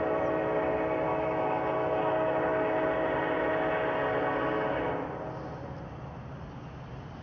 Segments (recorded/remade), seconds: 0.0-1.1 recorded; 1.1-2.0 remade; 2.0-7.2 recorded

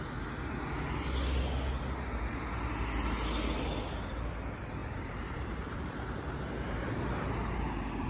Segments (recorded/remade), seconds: 0.0-4.8 recorded; 4.8-7.1 remade; 7.1-8.1 recorded

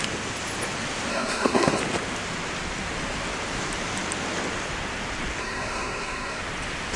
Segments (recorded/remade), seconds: 0.0-1.1 recorded; 1.1-1.8 remade; 1.8-5.4 recorded; 5.4-6.4 remade; 6.4-7.0 recorded